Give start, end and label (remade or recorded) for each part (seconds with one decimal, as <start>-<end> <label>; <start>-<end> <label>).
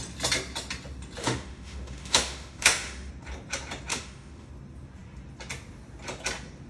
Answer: 0.0-1.2 recorded; 1.2-3.1 remade; 3.1-3.9 recorded; 3.9-4.5 remade; 4.5-6.7 recorded